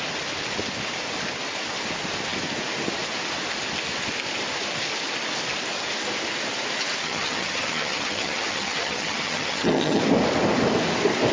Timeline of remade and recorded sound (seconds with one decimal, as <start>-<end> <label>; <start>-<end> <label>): 0.0-7.0 recorded; 7.0-10.0 remade; 10.0-11.3 recorded

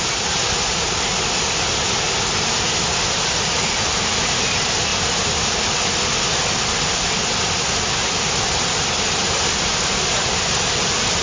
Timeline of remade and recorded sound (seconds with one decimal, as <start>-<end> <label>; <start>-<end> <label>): 0.0-11.2 recorded

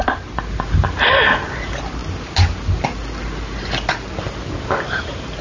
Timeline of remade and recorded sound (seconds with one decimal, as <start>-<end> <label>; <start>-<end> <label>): 0.0-5.4 recorded

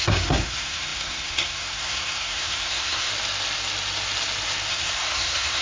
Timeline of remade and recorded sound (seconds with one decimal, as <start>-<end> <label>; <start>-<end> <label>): 0.0-3.1 remade; 3.1-4.7 recorded; 4.7-5.6 remade

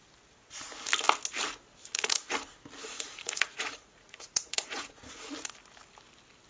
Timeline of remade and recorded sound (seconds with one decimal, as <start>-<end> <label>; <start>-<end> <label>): 0.0-1.8 recorded; 1.8-2.3 remade; 2.3-2.8 recorded; 2.8-5.3 remade; 5.3-6.5 recorded